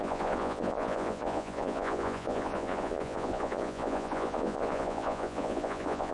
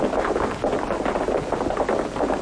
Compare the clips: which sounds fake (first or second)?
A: first